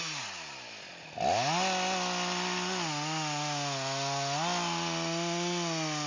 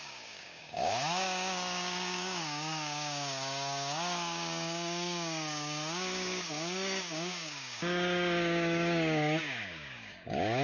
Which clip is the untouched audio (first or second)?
first